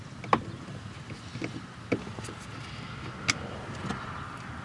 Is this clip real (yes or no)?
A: yes